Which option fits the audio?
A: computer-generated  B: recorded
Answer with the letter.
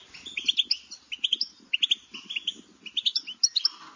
B